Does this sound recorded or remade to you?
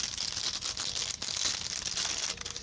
recorded